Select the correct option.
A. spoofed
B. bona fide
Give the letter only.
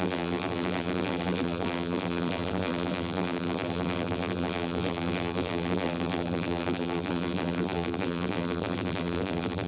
A